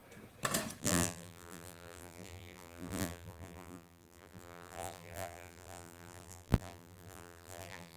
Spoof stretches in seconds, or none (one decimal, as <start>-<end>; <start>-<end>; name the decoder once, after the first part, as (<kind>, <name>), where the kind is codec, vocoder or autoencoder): 0.8-8.0 (vocoder, BigVGAN v2)